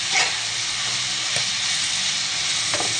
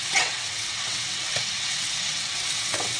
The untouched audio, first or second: first